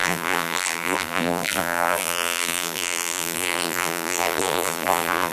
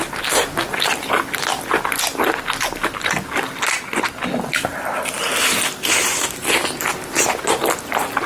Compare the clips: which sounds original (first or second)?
second